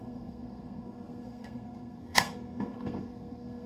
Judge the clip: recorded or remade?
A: remade